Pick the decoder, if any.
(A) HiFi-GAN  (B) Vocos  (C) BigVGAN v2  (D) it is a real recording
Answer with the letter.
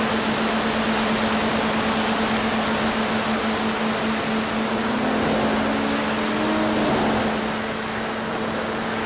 D